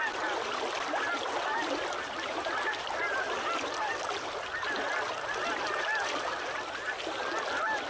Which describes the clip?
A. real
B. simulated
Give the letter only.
A